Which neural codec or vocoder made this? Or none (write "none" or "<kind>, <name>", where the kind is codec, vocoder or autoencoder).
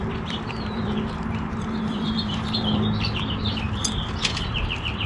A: vocoder, BigVGAN v2